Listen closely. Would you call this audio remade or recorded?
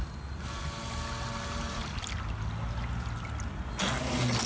recorded